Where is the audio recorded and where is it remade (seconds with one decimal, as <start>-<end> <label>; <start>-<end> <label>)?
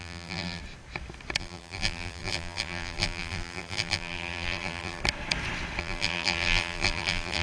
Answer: 0.0-0.6 remade; 0.6-1.4 recorded; 1.4-5.0 remade; 5.0-5.8 recorded; 5.8-7.4 remade